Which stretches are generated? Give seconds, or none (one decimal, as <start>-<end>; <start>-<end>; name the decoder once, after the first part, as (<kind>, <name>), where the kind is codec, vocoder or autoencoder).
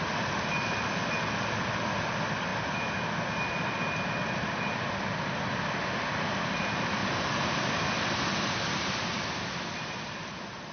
7.0-7.7 (vocoder, BigVGAN v2)